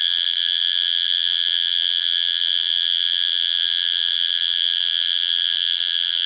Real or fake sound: fake